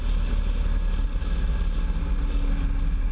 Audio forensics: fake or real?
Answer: real